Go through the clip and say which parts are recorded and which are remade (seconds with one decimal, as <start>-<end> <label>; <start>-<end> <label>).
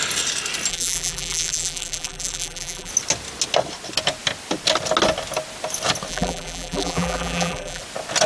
0.0-0.7 recorded; 0.7-2.9 remade; 2.9-6.1 recorded; 6.1-7.8 remade; 7.8-8.3 recorded